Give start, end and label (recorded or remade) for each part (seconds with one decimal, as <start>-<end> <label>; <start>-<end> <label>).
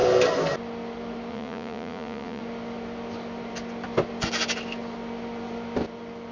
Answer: 0.0-1.3 recorded; 1.3-2.4 remade; 2.4-6.3 recorded